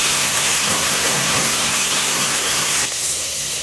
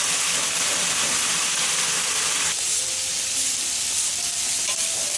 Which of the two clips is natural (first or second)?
second